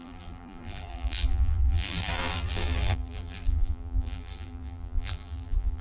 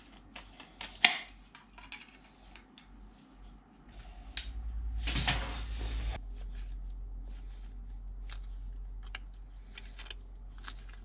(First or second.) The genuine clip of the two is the second